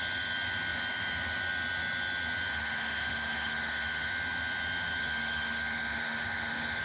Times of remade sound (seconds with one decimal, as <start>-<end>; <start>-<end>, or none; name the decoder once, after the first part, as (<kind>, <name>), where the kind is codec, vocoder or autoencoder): 2.5-4.1 (autoencoder, DAC-VAE); 5.0-6.8